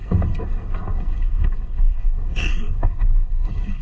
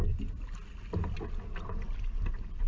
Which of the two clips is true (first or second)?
second